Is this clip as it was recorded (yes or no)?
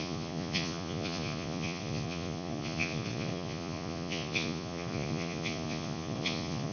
no